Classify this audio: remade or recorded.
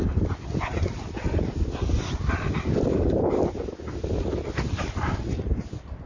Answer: recorded